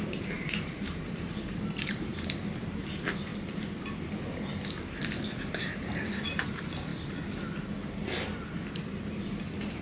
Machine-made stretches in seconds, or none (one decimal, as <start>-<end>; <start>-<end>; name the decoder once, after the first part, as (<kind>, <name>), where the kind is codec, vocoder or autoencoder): 0.0-2.1 (vocoder, BigVGAN v2); 2.6-3.3; 5.6-6.9